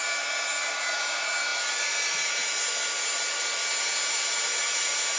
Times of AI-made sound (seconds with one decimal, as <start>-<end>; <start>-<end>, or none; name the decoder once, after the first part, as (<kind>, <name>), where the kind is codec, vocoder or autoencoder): none